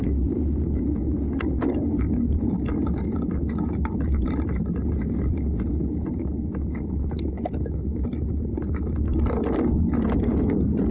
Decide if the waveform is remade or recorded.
recorded